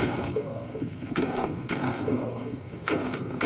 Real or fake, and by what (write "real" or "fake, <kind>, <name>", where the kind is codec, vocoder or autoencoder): fake, codec, SNAC